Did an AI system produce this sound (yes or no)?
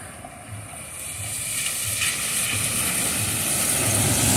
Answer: no